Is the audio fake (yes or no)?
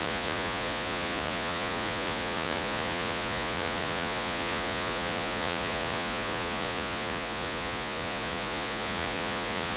yes